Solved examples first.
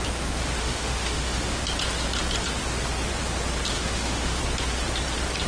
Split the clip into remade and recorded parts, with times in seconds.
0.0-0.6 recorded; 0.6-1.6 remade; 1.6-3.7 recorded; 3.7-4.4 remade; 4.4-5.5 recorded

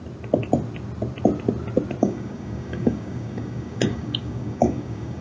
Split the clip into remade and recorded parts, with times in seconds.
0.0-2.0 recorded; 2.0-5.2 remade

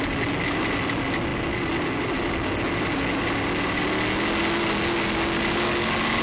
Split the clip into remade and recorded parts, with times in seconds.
0.0-6.2 recorded